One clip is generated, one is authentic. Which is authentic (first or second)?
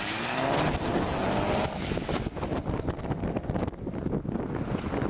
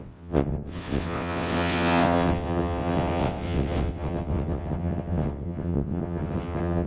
first